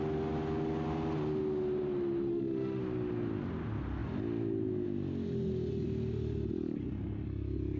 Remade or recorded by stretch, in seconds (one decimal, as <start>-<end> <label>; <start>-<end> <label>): 0.0-2.3 recorded; 2.3-2.8 remade; 2.8-7.8 recorded